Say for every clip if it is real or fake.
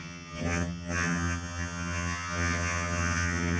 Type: fake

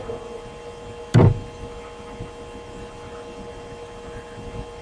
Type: real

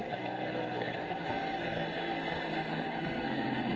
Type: fake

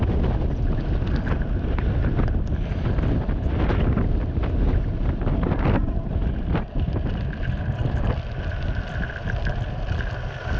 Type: real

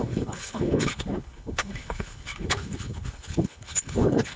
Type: fake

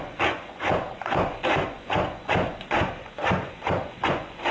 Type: fake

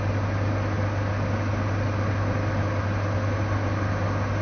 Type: real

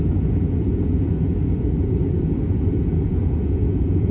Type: fake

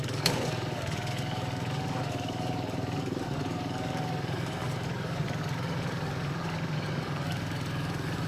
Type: fake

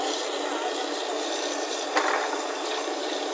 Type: fake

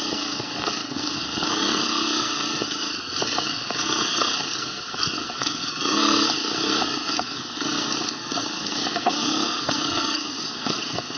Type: fake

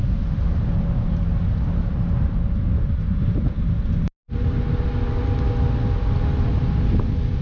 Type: real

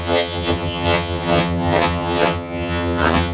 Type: fake